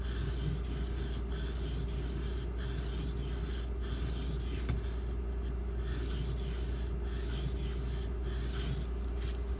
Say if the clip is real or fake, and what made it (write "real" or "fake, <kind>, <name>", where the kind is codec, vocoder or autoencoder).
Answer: real